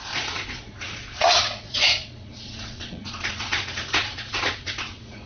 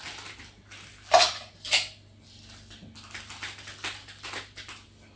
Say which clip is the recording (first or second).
second